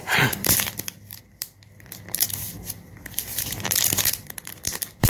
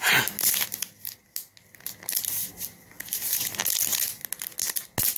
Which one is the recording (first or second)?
second